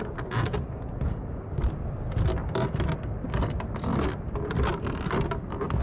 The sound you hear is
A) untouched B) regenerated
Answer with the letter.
A